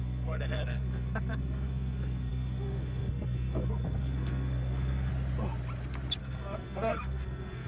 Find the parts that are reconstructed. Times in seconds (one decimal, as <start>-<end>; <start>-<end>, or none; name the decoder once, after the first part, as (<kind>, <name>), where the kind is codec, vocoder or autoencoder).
0.0-5.1 (codec, SNAC); 6.2-7.7